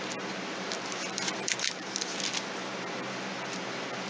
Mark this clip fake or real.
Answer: real